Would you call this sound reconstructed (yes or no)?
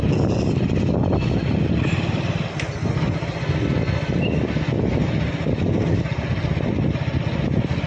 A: no